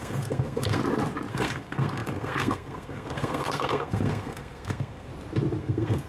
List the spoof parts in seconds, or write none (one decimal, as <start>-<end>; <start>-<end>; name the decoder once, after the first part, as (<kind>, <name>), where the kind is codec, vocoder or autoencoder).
0.0-0.8 (codec, SNAC); 1.3-5.1; 5.6-6.1